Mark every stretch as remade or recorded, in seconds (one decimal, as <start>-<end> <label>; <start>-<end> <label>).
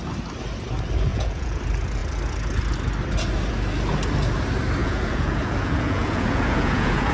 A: 0.0-1.1 recorded; 1.1-1.6 remade; 1.6-4.8 recorded; 4.8-7.1 remade